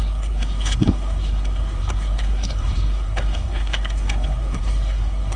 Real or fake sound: fake